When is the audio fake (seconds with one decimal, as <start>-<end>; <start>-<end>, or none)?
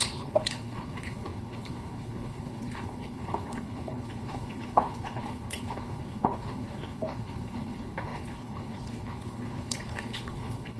0.0-10.8